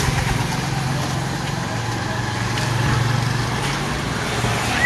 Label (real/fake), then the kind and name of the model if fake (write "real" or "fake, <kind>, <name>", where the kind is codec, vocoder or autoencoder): real